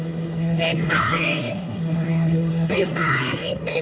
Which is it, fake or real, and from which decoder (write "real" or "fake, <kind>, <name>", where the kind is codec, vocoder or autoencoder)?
fake, codec, SNAC